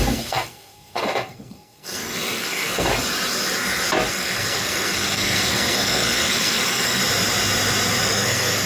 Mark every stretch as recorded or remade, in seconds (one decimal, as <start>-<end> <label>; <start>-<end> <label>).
0.0-2.9 remade; 2.9-4.1 recorded; 4.1-7.0 remade; 7.0-8.0 recorded; 8.0-8.7 remade